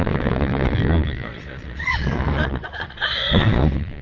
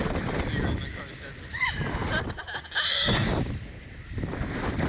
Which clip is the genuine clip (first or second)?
second